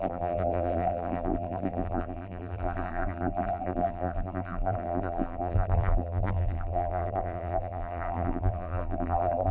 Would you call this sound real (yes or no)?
no